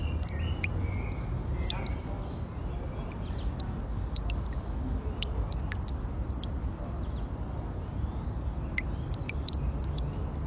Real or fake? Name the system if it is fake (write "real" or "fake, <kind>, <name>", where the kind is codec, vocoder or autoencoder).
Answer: real